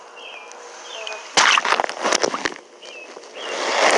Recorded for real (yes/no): yes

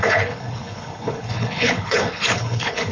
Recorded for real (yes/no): no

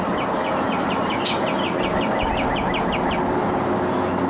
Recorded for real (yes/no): yes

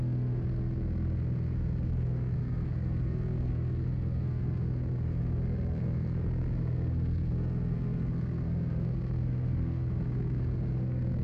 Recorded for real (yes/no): no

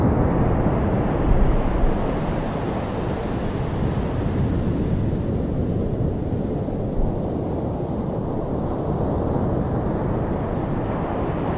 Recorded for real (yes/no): yes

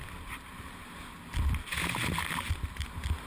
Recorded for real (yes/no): yes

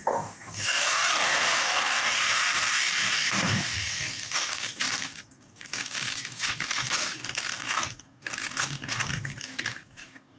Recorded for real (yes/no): no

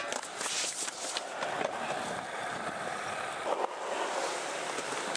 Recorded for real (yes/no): no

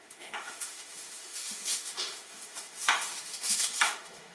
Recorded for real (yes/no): no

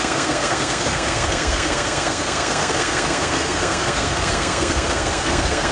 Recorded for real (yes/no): no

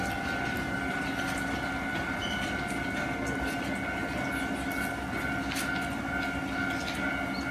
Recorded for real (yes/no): yes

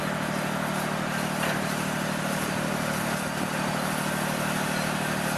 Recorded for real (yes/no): yes